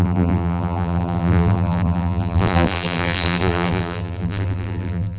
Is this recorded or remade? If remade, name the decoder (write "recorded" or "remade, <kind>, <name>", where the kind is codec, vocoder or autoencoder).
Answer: remade, vocoder, BigVGAN v2